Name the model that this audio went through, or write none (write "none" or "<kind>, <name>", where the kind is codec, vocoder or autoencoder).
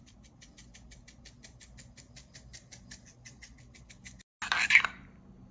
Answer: none